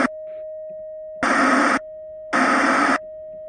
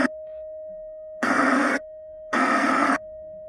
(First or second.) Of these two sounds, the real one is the first